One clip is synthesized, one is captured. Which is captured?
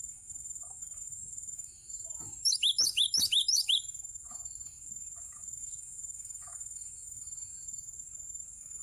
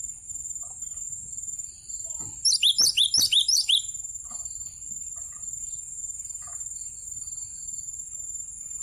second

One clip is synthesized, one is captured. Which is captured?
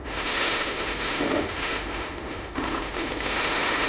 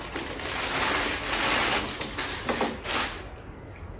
second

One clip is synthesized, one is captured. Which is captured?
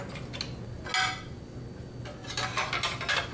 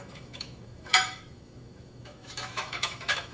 first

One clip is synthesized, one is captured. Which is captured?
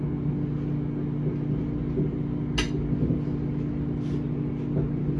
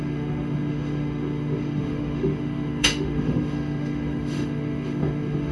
first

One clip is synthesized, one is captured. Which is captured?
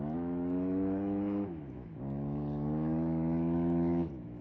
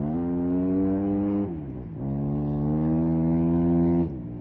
second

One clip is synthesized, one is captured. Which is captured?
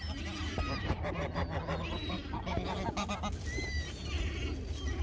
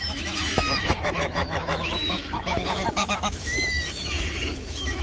first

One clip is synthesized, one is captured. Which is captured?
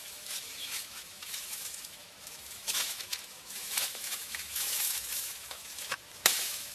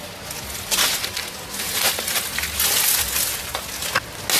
second